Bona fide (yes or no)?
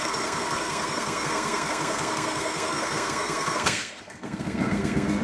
no